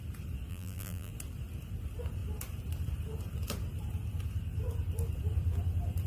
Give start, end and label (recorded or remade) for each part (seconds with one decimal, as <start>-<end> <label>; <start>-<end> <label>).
0.0-0.5 recorded; 0.5-1.1 remade; 1.1-6.1 recorded